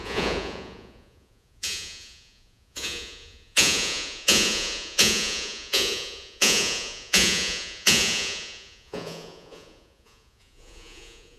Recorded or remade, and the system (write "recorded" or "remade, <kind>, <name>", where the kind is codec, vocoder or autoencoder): remade, vocoder, Vocos